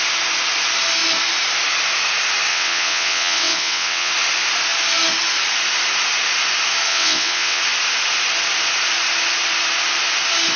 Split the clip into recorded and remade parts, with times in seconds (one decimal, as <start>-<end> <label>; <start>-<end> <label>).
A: 0.0-2.5 recorded; 2.5-4.1 remade; 4.1-6.9 recorded; 6.9-7.6 remade; 7.6-10.6 recorded